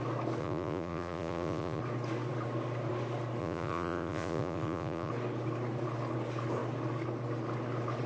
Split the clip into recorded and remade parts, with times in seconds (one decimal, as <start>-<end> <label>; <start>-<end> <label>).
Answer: 0.0-0.4 recorded; 0.4-1.8 remade; 1.8-3.4 recorded; 3.4-5.1 remade; 5.1-8.1 recorded